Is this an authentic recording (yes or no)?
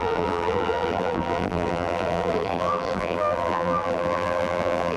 no